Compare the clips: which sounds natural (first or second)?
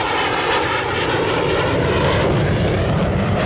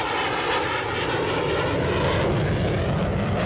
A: second